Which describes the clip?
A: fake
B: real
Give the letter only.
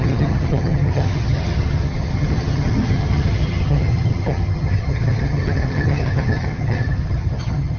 A